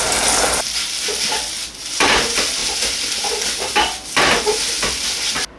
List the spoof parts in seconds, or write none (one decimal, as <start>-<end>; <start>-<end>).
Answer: none